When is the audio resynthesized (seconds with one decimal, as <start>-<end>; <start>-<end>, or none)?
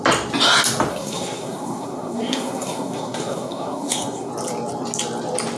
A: 0.9-4.3